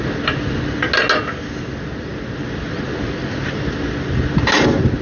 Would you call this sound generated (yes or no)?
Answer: no